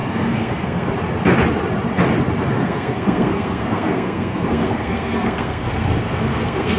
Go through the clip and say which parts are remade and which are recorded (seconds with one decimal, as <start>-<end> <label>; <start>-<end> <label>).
0.0-0.9 remade; 0.9-2.6 recorded; 2.6-6.8 remade